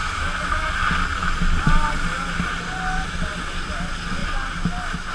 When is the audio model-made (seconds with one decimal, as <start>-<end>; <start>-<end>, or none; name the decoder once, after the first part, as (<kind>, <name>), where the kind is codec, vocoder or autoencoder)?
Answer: 0.0-0.7 (autoencoder, DAC-VAE)